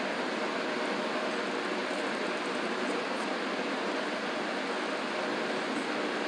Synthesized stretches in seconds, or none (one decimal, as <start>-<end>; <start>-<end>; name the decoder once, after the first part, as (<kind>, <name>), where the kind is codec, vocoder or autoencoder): 1.8-4.1 (vocoder, BigVGAN v2)